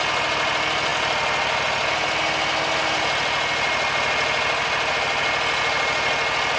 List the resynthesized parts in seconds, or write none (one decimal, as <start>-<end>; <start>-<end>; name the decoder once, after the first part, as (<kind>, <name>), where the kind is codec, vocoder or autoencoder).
none